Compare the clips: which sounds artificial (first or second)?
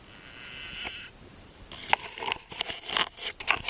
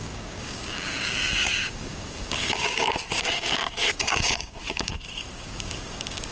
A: second